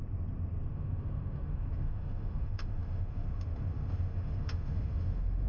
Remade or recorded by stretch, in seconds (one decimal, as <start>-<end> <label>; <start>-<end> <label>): 0.0-0.7 recorded; 0.7-5.5 remade